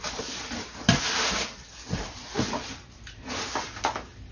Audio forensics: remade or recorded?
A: recorded